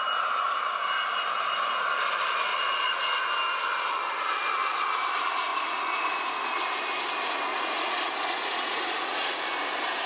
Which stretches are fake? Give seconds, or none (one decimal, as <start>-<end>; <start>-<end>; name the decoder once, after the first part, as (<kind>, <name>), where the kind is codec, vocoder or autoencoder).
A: 2.5-3.2 (vocoder, Vocos); 5.5-6.5; 7.5-9.4